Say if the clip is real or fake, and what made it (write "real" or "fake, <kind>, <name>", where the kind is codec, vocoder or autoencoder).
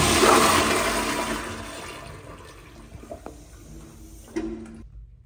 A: real